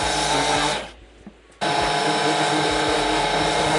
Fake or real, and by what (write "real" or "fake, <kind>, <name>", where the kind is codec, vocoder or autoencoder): real